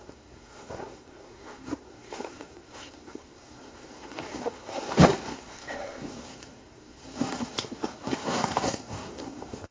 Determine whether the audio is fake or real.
fake